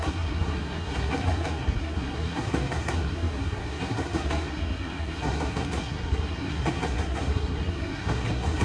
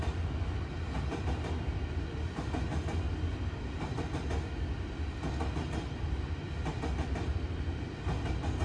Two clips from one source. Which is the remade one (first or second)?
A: first